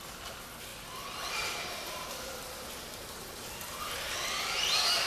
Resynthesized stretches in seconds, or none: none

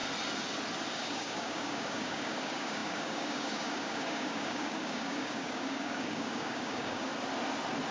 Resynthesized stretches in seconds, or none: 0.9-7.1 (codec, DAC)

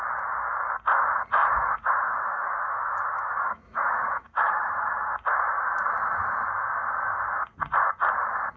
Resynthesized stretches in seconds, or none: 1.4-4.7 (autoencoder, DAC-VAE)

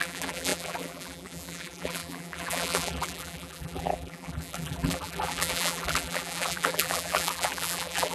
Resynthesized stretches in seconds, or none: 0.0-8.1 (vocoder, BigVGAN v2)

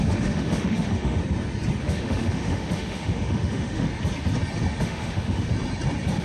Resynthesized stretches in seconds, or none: 0.0-1.2 (autoencoder, DAC-VAE); 1.8-3.9; 4.8-5.5

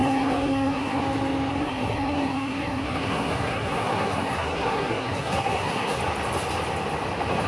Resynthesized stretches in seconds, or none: 0.0-1.0 (codec, SNAC); 1.5-6.0